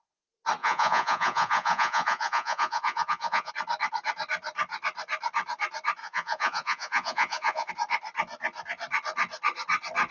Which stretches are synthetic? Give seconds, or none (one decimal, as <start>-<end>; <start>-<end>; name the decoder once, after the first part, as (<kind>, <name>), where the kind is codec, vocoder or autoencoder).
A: 0.6-3.5 (vocoder, Vocos); 6.0-7.7